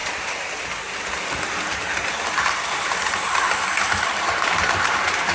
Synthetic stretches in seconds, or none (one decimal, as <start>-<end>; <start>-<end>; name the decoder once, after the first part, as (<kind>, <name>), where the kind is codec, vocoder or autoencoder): 0.0-0.6 (vocoder, BigVGAN v2)